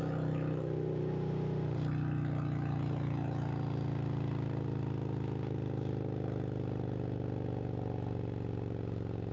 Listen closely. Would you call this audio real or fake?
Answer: real